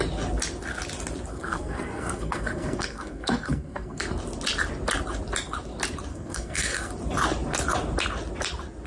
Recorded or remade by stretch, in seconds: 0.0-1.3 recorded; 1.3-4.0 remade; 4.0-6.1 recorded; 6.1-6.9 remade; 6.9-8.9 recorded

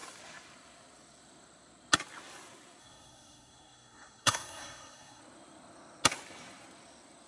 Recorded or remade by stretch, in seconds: 0.0-2.8 recorded; 2.8-5.2 remade; 5.2-7.3 recorded